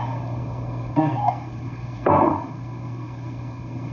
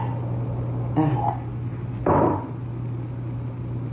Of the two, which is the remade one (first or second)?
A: first